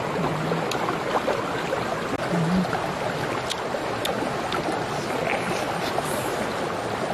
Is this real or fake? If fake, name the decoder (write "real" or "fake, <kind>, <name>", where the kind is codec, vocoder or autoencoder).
real